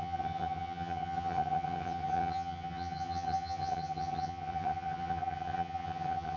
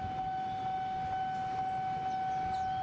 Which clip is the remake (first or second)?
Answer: first